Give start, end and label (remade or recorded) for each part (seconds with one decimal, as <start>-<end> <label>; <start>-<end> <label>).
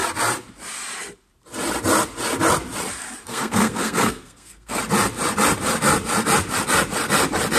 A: 0.0-3.3 recorded; 3.3-4.8 remade; 4.8-7.6 recorded